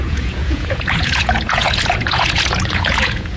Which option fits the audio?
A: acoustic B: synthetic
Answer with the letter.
B